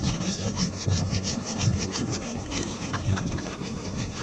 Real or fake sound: fake